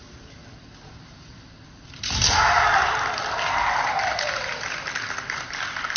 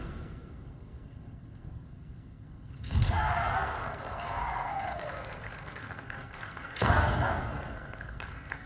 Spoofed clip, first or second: second